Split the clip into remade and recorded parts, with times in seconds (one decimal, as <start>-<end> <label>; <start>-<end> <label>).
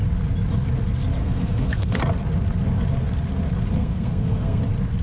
0.0-1.2 recorded; 1.2-2.0 remade; 2.0-3.8 recorded; 3.8-4.6 remade; 4.6-5.0 recorded